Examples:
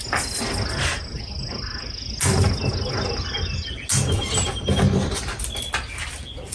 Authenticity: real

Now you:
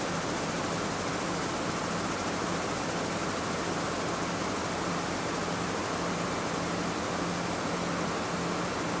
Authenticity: real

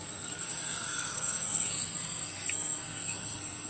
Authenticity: fake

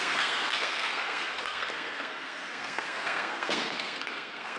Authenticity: fake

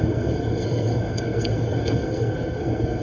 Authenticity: fake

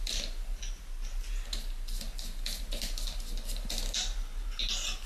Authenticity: real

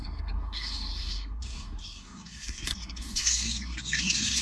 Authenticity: fake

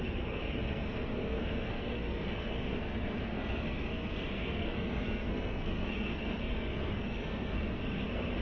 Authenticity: fake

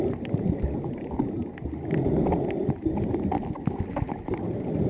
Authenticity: real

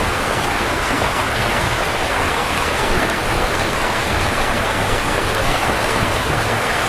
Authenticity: fake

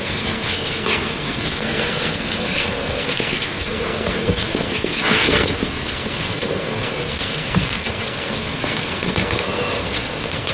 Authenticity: fake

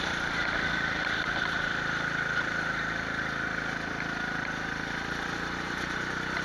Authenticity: real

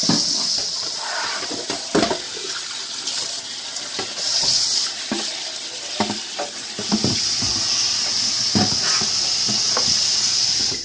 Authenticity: real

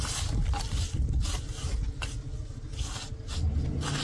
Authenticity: real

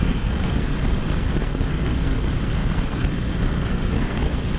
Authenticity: fake